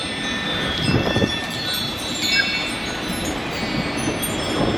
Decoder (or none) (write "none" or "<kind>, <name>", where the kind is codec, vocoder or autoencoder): none